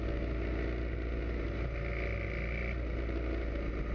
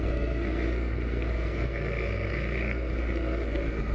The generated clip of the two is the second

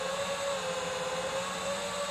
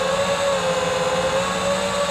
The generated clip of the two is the first